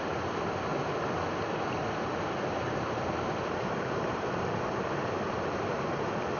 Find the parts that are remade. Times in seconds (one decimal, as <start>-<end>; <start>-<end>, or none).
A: 0.0-0.7; 1.7-6.4